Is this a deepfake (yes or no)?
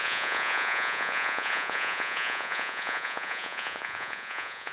yes